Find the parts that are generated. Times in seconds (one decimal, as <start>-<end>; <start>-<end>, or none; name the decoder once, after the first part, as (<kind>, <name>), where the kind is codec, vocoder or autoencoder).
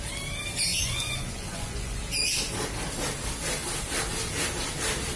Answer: 0.7-2.0 (vocoder, Vocos)